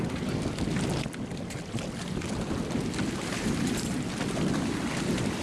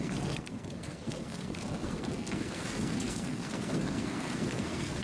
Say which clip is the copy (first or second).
second